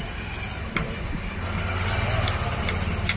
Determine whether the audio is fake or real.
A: real